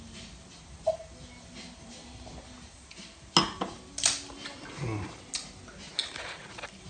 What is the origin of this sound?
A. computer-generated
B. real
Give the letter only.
B